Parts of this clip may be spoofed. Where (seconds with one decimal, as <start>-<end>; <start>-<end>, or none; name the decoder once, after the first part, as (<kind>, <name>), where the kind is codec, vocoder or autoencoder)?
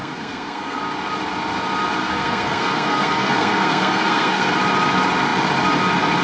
0.0-0.8 (codec, SNAC); 2.0-4.5